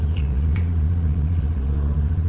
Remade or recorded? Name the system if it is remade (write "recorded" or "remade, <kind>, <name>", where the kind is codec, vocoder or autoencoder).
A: remade, vocoder, Vocos